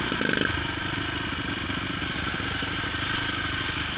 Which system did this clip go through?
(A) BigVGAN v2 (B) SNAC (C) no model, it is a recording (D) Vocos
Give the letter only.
C